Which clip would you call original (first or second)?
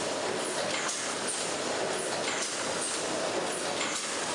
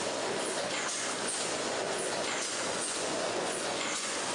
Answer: first